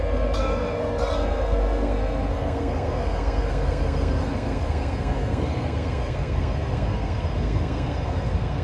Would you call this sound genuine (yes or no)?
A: no